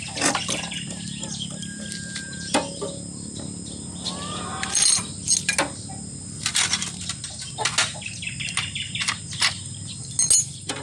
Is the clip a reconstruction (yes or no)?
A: no